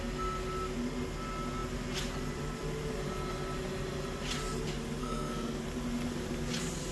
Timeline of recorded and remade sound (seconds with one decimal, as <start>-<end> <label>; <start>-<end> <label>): 0.0-5.0 recorded; 5.0-5.6 remade; 5.6-6.9 recorded